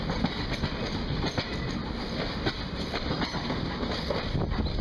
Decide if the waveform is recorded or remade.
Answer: recorded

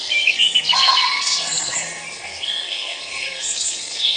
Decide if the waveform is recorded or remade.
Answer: remade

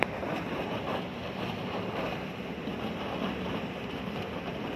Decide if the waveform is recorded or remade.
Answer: recorded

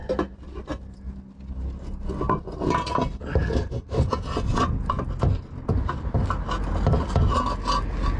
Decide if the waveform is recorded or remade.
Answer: recorded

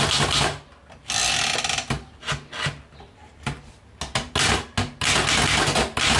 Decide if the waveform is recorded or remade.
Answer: recorded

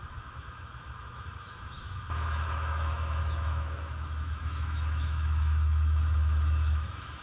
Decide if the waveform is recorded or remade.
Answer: remade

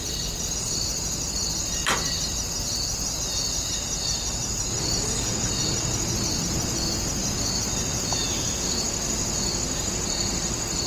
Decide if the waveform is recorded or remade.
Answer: recorded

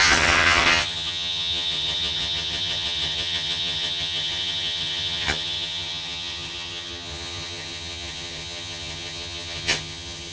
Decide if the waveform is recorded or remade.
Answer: remade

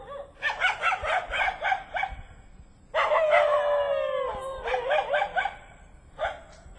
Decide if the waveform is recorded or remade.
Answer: recorded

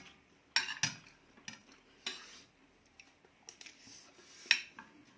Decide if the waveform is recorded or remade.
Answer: recorded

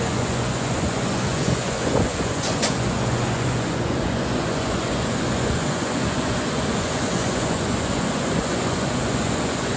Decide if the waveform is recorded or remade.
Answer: remade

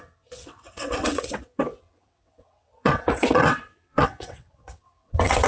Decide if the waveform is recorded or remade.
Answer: remade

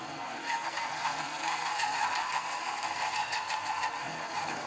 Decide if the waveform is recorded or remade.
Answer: remade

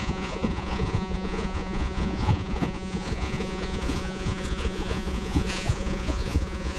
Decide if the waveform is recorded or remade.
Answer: remade